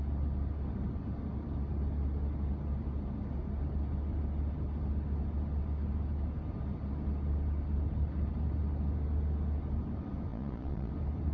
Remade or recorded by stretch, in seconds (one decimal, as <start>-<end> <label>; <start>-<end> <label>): 0.0-10.3 recorded; 10.3-10.9 remade; 10.9-11.3 recorded